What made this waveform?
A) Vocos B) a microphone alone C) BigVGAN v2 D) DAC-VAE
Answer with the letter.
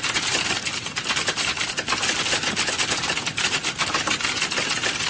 B